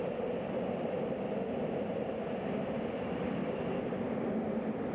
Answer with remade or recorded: recorded